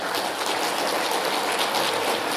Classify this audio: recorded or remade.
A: recorded